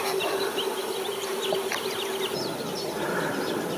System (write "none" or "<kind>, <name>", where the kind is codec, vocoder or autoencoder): none